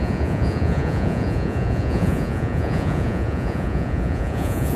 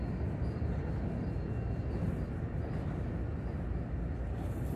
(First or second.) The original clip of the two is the second